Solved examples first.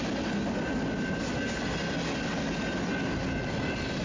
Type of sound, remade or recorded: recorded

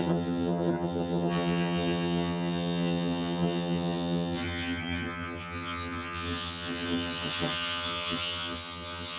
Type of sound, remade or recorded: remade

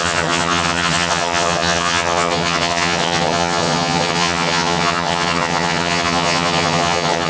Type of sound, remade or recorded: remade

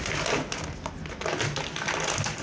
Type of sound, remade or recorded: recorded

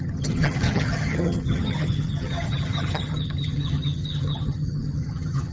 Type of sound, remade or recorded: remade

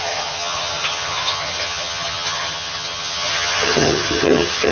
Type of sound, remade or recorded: remade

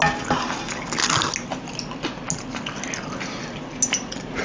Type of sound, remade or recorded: recorded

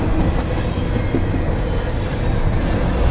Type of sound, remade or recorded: recorded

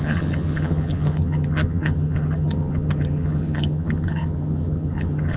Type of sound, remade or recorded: remade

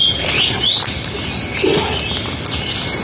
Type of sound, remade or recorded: recorded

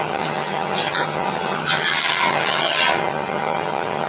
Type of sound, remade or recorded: remade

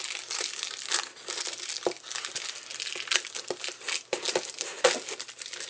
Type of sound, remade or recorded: recorded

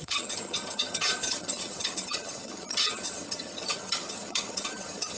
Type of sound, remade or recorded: remade